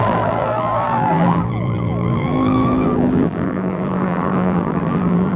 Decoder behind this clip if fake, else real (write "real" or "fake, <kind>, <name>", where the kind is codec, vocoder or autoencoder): fake, vocoder, BigVGAN v2